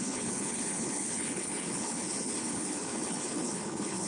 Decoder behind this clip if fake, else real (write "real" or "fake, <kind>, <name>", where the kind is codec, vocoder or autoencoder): fake, codec, HILCodec